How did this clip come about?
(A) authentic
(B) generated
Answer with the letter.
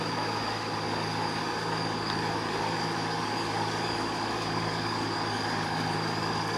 B